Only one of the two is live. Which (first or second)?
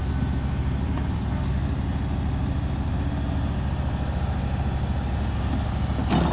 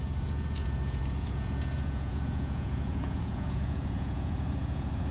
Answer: first